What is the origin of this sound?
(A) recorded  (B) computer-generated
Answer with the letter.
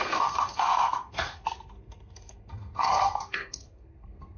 B